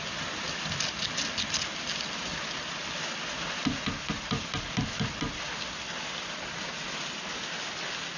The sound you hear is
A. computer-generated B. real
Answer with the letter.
B